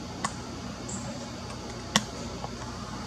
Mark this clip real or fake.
real